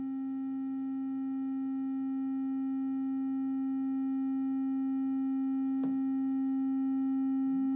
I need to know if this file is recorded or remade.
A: recorded